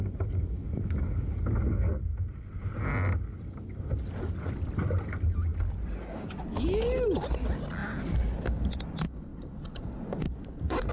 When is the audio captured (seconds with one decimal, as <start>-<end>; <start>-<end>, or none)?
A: 0.0-9.3